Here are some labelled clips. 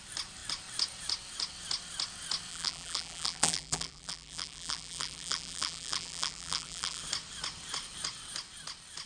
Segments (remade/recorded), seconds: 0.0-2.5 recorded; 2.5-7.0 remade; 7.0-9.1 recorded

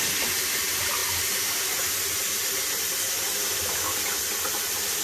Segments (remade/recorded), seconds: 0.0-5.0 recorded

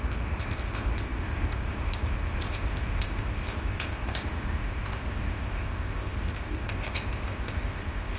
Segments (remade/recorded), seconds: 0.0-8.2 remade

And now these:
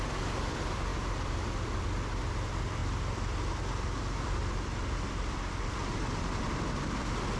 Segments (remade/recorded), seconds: 0.0-7.4 recorded